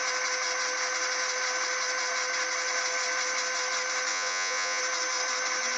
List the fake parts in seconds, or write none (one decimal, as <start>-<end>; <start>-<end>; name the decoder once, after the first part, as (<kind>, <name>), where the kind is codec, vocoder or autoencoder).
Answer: 4.1-4.8 (vocoder, Vocos)